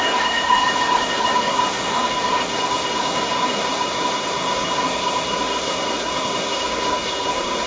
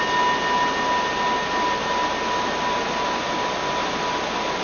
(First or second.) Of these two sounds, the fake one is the first